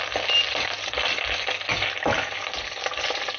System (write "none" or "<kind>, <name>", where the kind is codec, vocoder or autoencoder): none